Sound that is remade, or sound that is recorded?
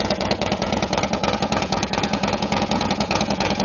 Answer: remade